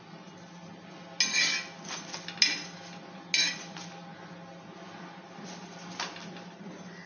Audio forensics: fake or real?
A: real